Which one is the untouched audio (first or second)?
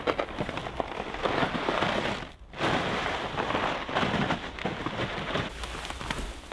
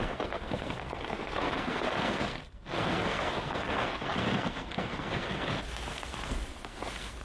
first